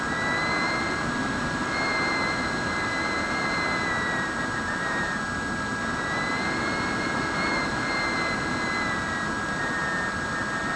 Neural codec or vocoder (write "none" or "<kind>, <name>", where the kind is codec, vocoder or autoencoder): none